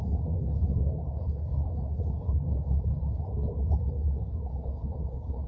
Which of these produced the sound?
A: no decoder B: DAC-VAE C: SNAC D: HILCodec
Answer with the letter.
D